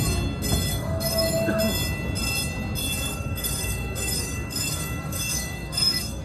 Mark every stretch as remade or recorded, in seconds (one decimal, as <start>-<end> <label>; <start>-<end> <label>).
0.0-0.7 recorded; 0.7-1.6 remade; 1.6-2.8 recorded; 2.8-6.2 remade